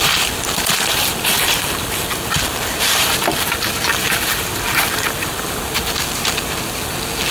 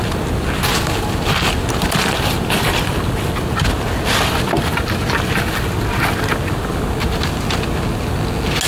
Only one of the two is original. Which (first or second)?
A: second